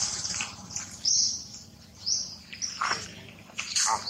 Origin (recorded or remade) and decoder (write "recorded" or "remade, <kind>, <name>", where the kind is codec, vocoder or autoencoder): remade, vocoder, BigVGAN v2